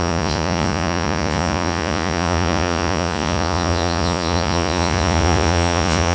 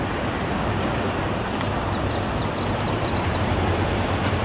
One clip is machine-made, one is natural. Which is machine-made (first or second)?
first